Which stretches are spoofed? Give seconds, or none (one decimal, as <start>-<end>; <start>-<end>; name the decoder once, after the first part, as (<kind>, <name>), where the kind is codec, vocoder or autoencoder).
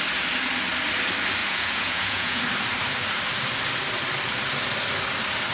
1.4-2.4 (vocoder, Vocos)